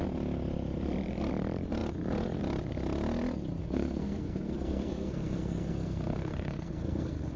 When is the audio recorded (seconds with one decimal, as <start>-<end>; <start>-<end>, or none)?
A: 0.0-3.6

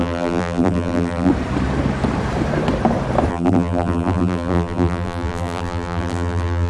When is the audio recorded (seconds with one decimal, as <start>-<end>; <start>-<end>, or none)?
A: 1.3-3.3